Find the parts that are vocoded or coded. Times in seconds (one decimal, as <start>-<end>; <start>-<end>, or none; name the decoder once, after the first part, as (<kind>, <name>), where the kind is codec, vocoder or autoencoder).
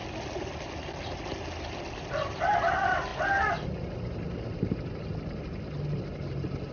none